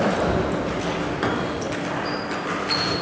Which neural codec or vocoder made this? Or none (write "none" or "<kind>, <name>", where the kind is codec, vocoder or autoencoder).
none